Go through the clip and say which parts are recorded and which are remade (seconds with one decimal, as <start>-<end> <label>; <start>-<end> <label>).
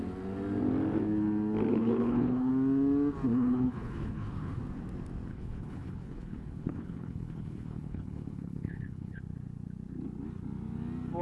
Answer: 0.0-1.7 recorded; 1.7-2.5 remade; 2.5-3.3 recorded; 3.3-4.6 remade; 4.6-5.3 recorded; 5.3-9.2 remade; 9.2-11.2 recorded